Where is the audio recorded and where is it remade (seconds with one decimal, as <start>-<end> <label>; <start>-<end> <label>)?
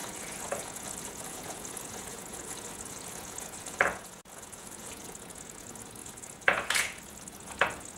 0.0-8.0 remade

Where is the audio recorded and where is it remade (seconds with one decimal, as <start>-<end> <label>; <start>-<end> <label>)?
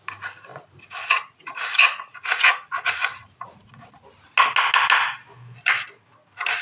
0.0-0.5 recorded; 0.5-3.9 remade; 3.9-6.6 recorded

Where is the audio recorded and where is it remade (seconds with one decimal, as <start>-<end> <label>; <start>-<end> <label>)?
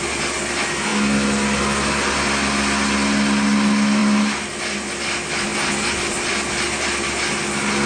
0.0-7.9 recorded